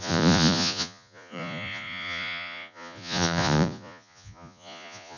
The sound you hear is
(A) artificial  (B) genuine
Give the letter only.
A